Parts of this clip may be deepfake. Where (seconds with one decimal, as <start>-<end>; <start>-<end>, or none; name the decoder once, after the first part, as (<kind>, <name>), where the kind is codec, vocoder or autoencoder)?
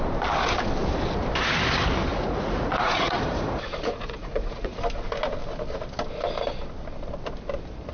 2.1-4.8 (vocoder, Vocos)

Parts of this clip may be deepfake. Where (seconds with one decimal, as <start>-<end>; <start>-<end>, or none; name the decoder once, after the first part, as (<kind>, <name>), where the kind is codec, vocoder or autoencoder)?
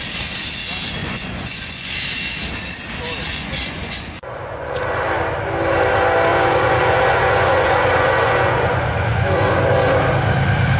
1.0-1.9 (vocoder, Vocos); 3.3-4.8; 6.3-9.6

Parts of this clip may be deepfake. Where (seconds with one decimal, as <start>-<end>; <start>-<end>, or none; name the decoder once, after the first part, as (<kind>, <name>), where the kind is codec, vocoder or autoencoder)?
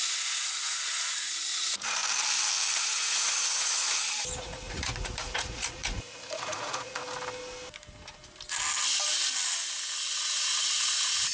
0.0-2.0 (vocoder, Vocos); 2.8-3.8; 4.4-7.0; 10.0-11.3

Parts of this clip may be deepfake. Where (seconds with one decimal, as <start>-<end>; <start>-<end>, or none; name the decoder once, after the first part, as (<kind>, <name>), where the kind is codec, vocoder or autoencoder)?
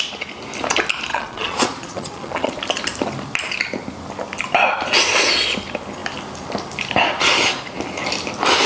1.1-2.5 (vocoder, Vocos)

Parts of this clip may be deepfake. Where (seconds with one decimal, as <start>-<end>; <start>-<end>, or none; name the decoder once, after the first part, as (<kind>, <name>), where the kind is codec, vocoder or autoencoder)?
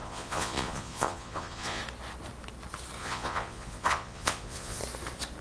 0.0-1.8 (vocoder, Vocos); 3.0-4.8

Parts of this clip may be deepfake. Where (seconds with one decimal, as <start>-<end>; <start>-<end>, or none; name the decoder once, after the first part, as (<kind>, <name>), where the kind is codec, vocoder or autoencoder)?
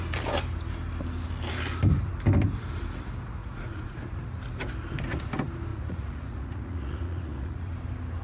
3.4-4.0 (vocoder, Vocos); 5.7-7.7